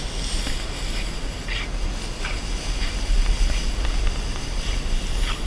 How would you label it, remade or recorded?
recorded